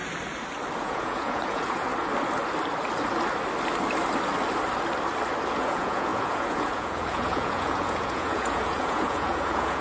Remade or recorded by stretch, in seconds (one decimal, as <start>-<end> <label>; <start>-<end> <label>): 0.0-0.8 recorded; 0.8-1.9 remade; 1.9-5.5 recorded; 5.5-9.8 remade